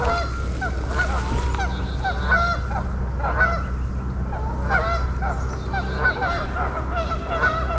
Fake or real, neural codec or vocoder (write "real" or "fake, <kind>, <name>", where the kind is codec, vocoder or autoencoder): real